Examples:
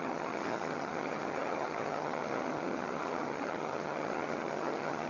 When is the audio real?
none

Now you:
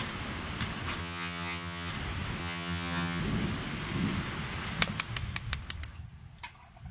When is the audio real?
0.0-1.0; 1.9-2.4; 3.2-6.9

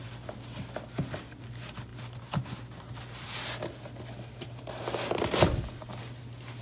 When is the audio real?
0.0-6.6

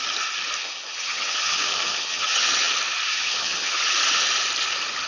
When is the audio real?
0.0-0.6; 2.7-3.1; 3.8-5.1

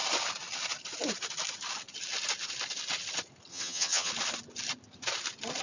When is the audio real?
0.0-3.5; 4.1-5.6

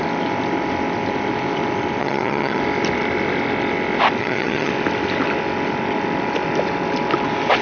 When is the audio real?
0.0-2.0; 2.6-4.2; 4.7-7.6